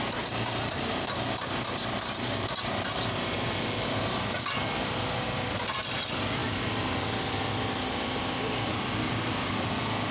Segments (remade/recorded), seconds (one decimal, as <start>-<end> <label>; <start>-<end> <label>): 0.0-10.1 recorded